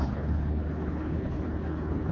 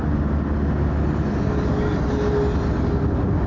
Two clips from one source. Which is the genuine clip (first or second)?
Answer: second